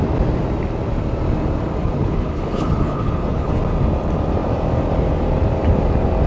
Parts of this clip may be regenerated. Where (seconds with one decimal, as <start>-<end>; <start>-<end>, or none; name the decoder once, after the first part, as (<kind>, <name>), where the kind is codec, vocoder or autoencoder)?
1.8-3.5 (codec, HILCodec)